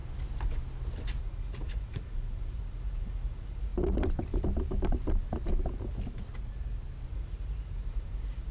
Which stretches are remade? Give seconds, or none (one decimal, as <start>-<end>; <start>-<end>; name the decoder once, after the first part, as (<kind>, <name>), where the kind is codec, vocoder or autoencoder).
1.2-3.7 (vocoder, Vocos); 7.1-8.5